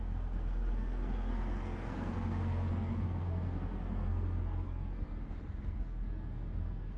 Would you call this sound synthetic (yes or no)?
yes